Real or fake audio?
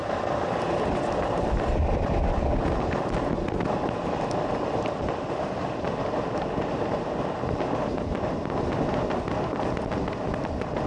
real